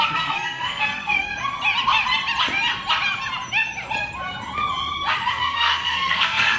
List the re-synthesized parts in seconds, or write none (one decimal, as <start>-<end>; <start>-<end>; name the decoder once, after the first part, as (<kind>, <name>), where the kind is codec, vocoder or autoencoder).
0.0-1.3 (codec, SNAC); 5.3-6.6